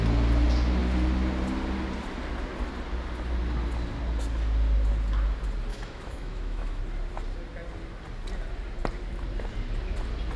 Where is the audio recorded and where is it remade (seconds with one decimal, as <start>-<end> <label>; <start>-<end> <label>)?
0.0-5.7 recorded; 5.7-6.8 remade; 6.8-10.4 recorded